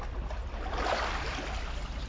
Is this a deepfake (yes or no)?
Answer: yes